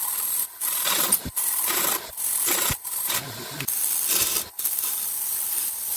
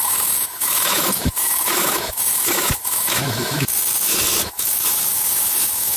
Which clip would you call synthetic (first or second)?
second